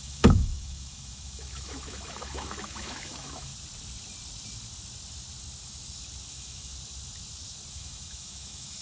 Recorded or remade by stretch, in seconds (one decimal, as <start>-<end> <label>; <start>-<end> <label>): 0.0-3.5 remade; 3.5-6.3 recorded; 6.3-6.7 remade; 6.7-7.7 recorded; 7.7-8.8 remade